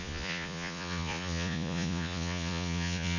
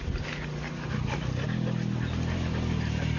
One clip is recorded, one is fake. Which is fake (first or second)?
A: first